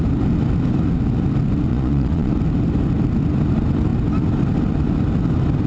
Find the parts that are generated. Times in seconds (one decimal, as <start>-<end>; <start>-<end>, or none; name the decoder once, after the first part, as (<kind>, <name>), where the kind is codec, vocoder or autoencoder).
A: 1.7-2.3 (vocoder, Vocos)